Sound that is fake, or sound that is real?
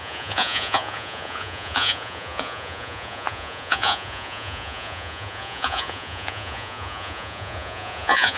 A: fake